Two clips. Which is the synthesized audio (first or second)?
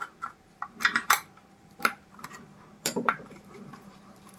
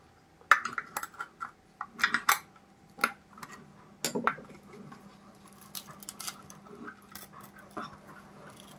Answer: first